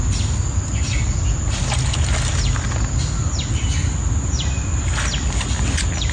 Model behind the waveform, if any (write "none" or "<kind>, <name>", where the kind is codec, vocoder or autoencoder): none